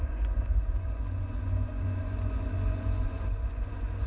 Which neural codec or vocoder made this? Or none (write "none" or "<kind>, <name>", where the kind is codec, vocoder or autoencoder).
vocoder, Vocos